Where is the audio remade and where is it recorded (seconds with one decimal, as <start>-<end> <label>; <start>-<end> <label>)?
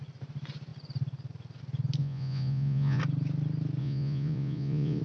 0.0-2.0 recorded; 2.0-3.0 remade; 3.0-3.8 recorded; 3.8-5.0 remade